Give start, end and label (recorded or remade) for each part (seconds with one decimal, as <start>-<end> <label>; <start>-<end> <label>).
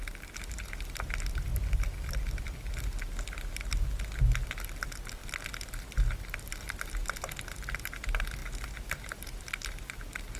0.0-1.5 recorded; 1.5-2.7 remade; 2.7-10.4 recorded